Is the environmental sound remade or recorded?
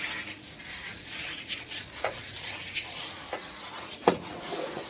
remade